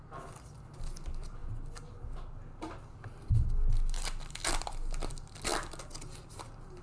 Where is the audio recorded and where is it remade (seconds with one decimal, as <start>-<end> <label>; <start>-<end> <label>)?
0.0-6.8 recorded